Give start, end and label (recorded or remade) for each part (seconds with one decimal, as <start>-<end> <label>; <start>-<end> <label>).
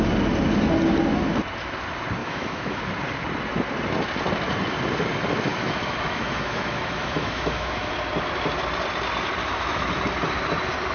0.0-2.2 recorded; 2.2-2.8 remade; 2.8-5.5 recorded; 5.5-7.9 remade; 7.9-9.4 recorded; 9.4-10.0 remade; 10.0-10.9 recorded